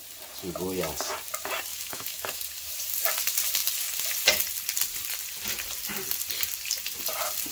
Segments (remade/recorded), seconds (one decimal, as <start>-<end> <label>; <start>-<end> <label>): 0.0-1.7 recorded; 1.7-2.4 remade; 2.4-7.5 recorded